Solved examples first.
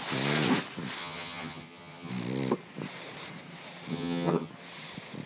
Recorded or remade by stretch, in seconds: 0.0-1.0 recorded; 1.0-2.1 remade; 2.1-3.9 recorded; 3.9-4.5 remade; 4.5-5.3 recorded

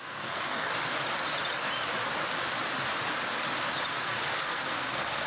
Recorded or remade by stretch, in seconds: 0.0-0.7 remade; 0.7-3.9 recorded; 3.9-5.3 remade

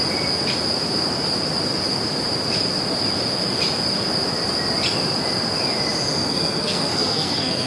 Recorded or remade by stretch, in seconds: 0.0-6.1 recorded; 6.1-7.7 remade

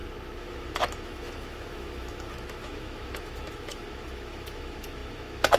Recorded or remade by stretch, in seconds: 0.0-5.6 remade